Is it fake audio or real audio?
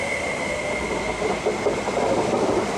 real